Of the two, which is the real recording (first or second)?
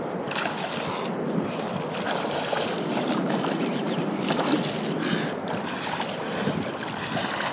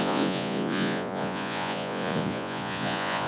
first